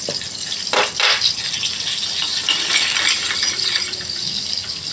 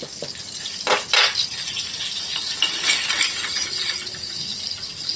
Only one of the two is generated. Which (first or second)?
first